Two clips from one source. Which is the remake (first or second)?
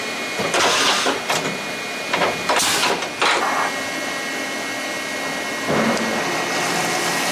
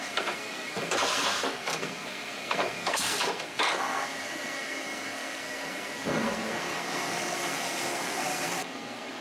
second